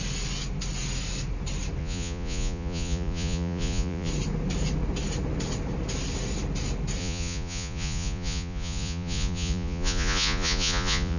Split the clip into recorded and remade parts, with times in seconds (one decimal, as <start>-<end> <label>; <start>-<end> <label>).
0.0-1.8 recorded; 1.8-4.1 remade; 4.1-7.0 recorded; 7.0-11.2 remade